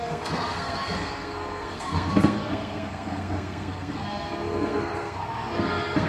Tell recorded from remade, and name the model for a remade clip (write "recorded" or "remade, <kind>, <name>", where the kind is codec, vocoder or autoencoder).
remade, codec, SNAC